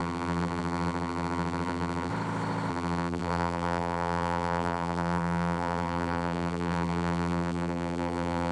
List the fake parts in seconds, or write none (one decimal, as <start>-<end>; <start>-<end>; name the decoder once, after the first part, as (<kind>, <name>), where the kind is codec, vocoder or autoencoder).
0.0-2.1 (vocoder, BigVGAN v2); 2.7-8.5